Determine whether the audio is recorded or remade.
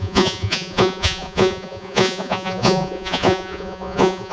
remade